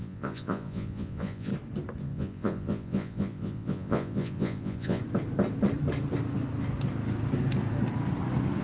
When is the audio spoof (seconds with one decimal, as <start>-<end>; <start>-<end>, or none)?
0.0-1.5; 2.0-5.0